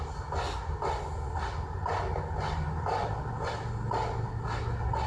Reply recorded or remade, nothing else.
recorded